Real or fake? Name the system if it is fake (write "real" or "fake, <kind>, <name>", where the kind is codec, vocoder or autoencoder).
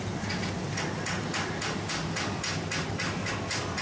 real